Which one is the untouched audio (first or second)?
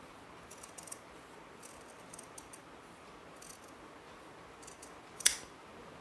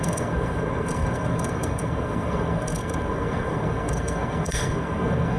first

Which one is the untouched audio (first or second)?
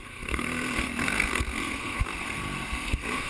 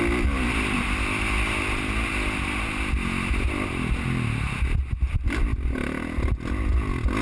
second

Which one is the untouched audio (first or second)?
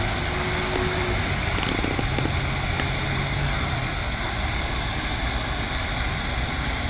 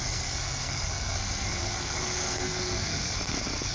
first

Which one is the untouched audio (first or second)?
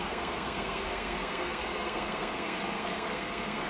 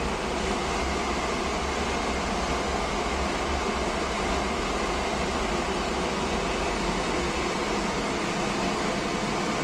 second